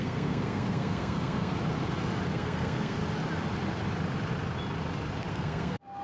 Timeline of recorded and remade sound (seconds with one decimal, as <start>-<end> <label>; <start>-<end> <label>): 0.0-1.5 remade; 1.5-2.3 recorded; 2.3-3.0 remade; 3.0-5.3 recorded; 5.3-6.0 remade